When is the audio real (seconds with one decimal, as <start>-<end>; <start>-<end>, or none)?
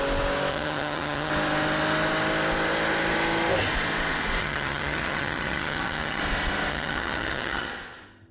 0.0-0.5; 1.3-4.4; 6.2-6.7; 7.7-8.3